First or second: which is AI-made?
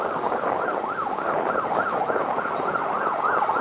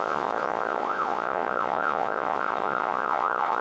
second